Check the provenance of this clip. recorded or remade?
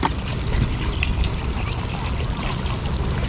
recorded